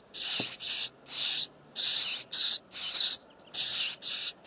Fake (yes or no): no